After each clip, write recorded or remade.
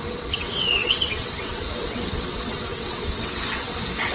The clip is remade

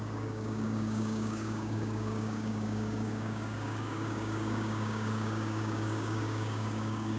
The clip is remade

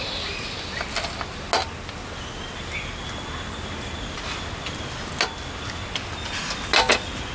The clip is recorded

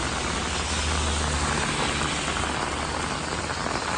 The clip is recorded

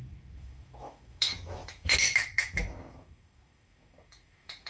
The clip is remade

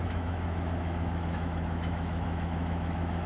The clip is remade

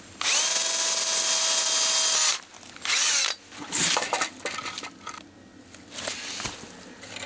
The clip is recorded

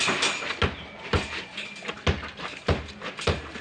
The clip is recorded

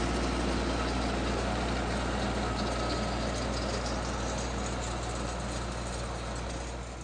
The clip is recorded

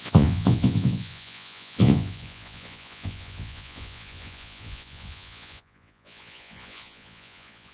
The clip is remade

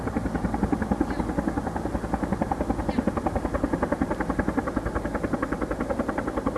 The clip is recorded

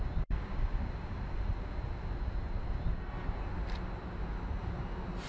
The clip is recorded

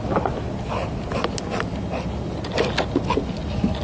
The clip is recorded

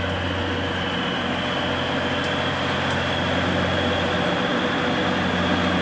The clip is recorded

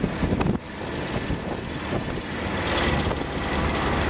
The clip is recorded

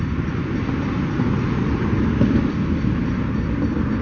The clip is recorded